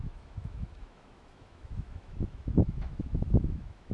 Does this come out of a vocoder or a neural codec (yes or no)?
yes